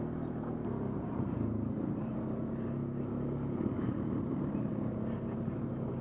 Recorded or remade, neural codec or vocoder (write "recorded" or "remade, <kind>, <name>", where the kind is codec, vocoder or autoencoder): remade, vocoder, BigVGAN v2